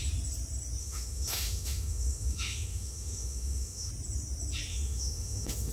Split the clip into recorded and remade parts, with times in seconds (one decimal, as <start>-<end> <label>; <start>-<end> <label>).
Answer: 0.0-0.8 recorded; 0.8-3.9 remade; 3.9-4.7 recorded; 4.7-5.7 remade